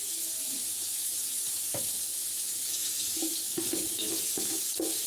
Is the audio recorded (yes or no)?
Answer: no